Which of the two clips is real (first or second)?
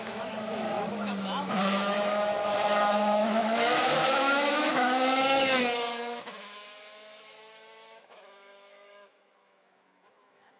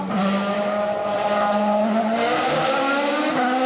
second